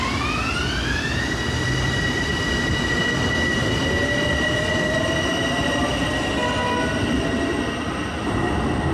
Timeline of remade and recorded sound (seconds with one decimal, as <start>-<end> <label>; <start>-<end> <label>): 0.0-4.3 recorded; 4.3-5.9 remade; 5.9-8.9 recorded